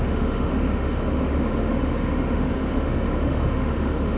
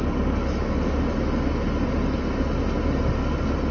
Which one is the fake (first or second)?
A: first